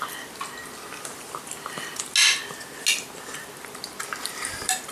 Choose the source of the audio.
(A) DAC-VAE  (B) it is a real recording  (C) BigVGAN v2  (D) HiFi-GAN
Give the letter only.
B